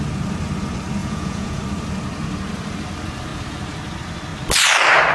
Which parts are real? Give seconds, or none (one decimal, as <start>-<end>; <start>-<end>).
0.0-1.0; 1.6-5.1